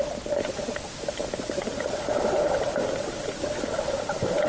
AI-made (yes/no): no